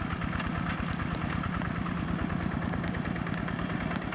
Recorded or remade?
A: recorded